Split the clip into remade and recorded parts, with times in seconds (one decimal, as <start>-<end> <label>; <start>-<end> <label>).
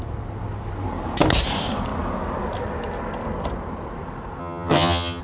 0.0-4.4 recorded; 4.4-5.2 remade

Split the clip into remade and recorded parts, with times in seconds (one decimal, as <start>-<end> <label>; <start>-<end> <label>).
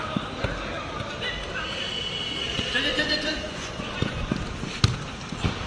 0.0-2.9 recorded; 2.9-4.3 remade; 4.3-5.7 recorded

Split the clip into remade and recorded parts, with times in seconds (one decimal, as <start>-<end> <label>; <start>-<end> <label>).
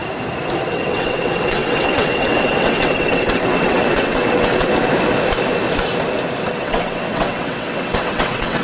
0.0-0.6 recorded; 0.6-4.7 remade; 4.7-6.5 recorded; 6.5-8.6 remade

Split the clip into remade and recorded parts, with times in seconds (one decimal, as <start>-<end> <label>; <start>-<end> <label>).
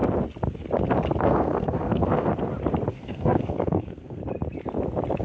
0.0-1.2 recorded; 1.2-2.3 remade; 2.3-2.9 recorded; 2.9-4.2 remade; 4.2-5.2 recorded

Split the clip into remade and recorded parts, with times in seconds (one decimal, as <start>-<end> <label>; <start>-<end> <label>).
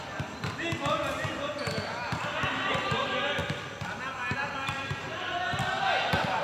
0.0-6.4 recorded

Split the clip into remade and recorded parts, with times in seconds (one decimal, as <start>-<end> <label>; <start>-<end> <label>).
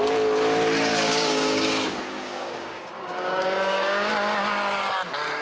0.0-0.9 recorded; 0.9-4.1 remade; 4.1-5.4 recorded